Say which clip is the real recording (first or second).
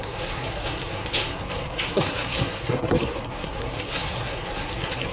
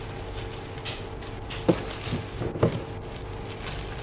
second